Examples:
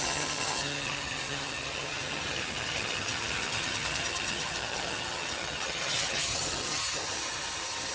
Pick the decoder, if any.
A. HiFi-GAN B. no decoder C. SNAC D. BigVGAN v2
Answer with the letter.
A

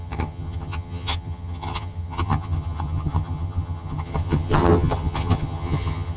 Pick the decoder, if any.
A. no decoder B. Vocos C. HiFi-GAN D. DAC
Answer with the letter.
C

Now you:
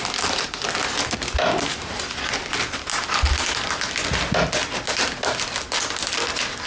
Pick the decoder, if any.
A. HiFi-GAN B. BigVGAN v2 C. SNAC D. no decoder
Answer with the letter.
D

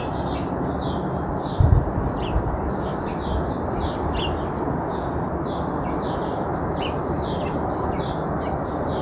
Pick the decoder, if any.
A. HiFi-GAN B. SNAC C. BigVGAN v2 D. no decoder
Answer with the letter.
D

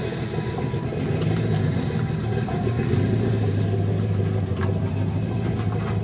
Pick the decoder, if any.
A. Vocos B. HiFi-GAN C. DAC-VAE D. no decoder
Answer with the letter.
D